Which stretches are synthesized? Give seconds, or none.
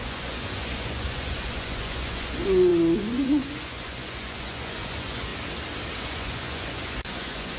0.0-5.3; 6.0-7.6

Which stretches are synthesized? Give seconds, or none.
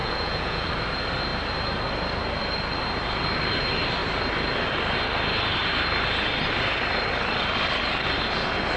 0.0-0.7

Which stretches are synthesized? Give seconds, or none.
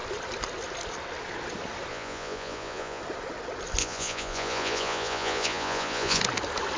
1.9-3.0; 3.8-6.2